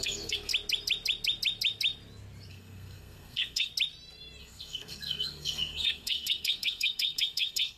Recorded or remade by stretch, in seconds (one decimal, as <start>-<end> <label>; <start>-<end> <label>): 0.0-0.5 remade; 0.5-2.5 recorded; 2.5-3.7 remade; 3.7-4.4 recorded; 4.4-7.8 remade